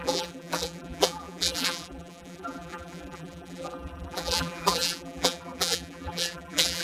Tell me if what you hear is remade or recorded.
remade